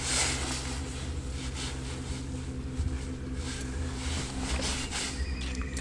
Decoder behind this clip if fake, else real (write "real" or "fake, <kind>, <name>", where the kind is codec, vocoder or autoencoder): real